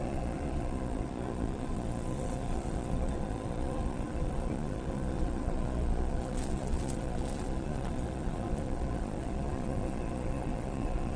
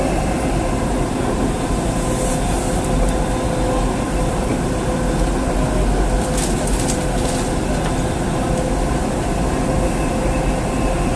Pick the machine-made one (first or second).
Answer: first